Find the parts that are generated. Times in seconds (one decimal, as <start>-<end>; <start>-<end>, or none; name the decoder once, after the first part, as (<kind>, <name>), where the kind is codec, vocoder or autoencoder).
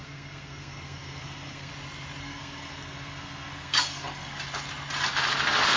0.0-1.7 (codec, SNAC); 2.2-4.4